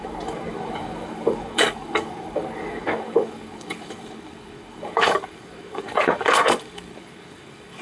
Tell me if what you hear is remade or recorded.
remade